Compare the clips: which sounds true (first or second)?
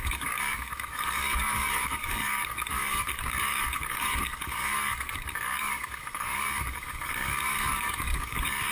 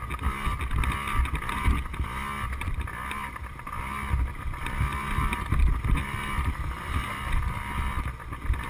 second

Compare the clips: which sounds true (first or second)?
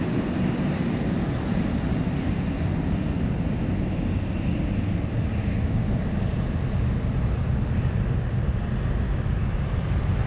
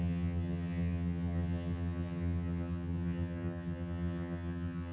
first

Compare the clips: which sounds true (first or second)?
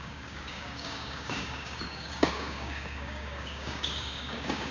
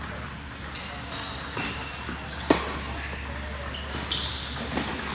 second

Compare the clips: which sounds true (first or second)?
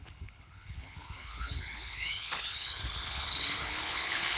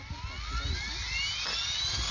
second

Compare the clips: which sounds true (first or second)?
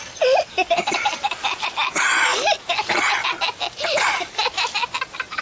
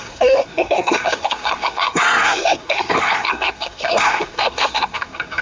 first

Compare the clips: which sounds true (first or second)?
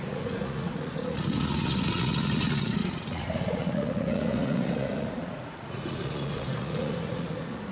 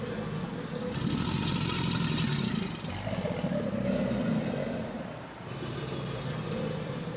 second